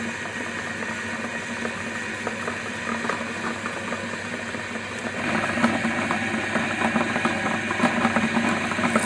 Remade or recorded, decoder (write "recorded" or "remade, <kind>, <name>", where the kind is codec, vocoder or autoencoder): recorded